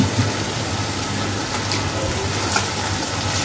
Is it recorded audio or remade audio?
recorded